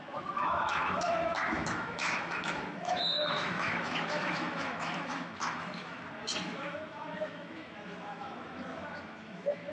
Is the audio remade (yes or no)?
yes